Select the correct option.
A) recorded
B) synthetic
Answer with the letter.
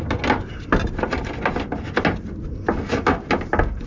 A